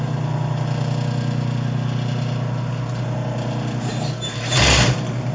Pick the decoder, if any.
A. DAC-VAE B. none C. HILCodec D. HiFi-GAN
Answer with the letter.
B